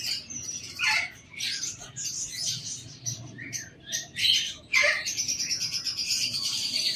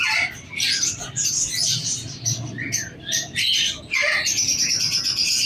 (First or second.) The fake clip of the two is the first